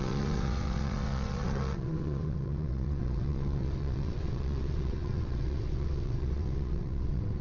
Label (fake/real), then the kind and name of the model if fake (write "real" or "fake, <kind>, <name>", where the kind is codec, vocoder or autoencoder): fake, vocoder, WaveNeXt